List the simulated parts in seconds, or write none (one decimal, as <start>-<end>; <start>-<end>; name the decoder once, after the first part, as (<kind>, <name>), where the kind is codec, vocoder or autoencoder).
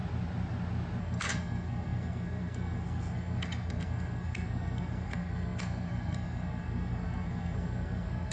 1.0-8.3 (codec, SNAC)